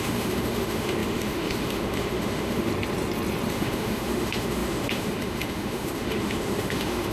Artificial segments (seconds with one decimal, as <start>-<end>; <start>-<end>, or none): 0.0-2.7; 3.5-7.1